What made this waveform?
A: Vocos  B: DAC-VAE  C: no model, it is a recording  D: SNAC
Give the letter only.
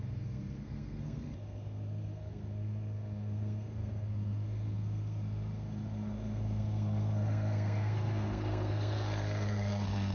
D